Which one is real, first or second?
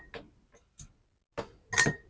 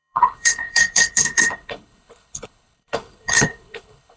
first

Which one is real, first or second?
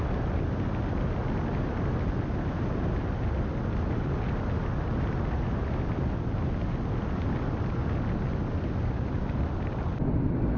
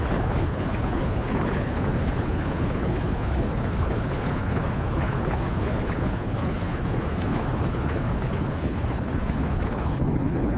first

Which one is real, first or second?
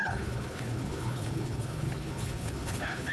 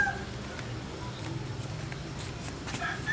second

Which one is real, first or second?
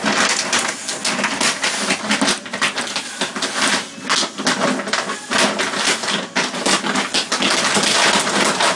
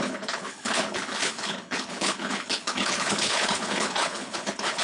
first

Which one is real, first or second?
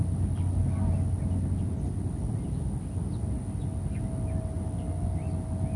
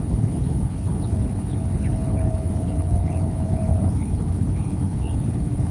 first